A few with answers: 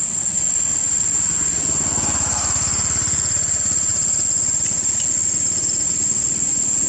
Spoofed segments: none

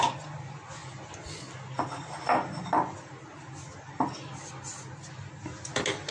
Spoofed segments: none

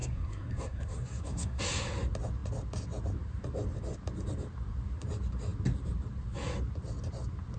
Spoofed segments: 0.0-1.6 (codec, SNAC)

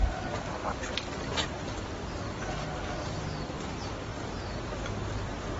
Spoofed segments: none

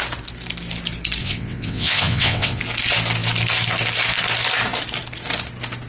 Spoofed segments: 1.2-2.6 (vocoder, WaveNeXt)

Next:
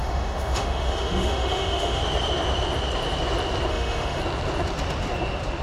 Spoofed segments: 0.0-2.0 (autoencoder, DAC-VAE); 3.7-4.2

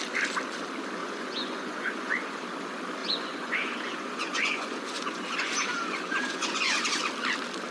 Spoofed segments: 1.0-2.4 (vocoder, Vocos); 3.0-7.0